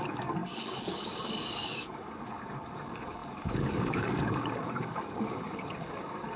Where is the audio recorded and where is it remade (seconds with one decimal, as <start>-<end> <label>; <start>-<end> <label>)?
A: 0.0-6.4 remade